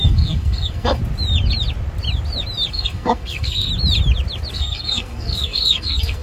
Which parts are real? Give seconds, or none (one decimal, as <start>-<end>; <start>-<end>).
1.0-2.7; 3.7-4.5